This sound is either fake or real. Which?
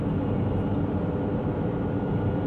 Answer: real